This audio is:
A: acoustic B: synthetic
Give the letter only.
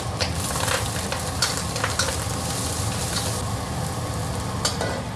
A